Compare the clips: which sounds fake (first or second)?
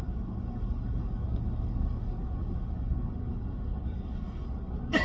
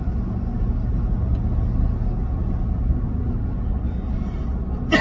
first